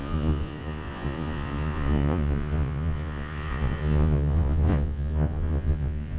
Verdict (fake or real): fake